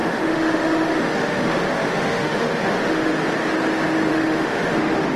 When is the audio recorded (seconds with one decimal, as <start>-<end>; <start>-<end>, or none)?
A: 3.1-4.1